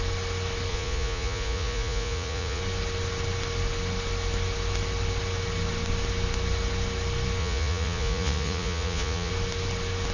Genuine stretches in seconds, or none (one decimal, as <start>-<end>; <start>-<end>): 0.0-0.7; 2.6-7.4; 9.3-10.1